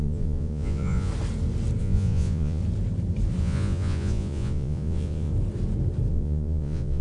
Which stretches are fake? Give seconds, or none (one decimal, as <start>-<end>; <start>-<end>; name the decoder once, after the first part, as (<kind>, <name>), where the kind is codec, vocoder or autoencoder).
0.0-1.1 (vocoder, Vocos); 1.8-2.6; 3.4-5.3; 6.1-7.0